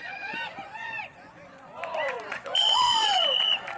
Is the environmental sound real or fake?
fake